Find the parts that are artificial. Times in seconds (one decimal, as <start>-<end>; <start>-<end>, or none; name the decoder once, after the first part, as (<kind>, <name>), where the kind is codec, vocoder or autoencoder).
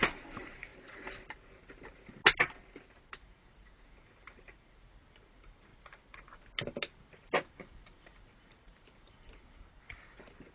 0.0-0.7 (vocoder, BigVGAN v2); 3.1-5.7; 7.5-10.5